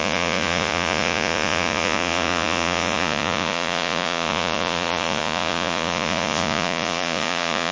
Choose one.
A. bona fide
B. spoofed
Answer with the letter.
B